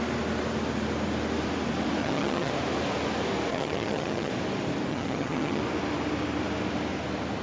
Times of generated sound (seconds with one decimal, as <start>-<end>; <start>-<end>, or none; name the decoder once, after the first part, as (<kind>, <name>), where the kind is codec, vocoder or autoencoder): 2.0-2.5 (vocoder, HiFi-GAN); 3.5-4.3; 4.9-5.6